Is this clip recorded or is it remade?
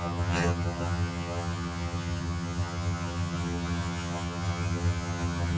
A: remade